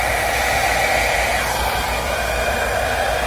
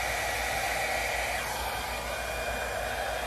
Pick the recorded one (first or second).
second